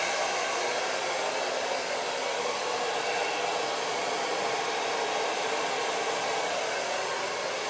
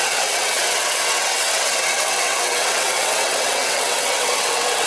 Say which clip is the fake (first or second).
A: second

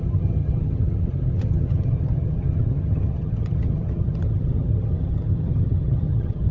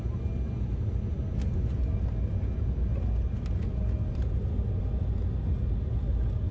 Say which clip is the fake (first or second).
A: first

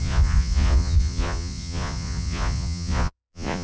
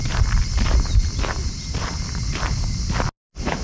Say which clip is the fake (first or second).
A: first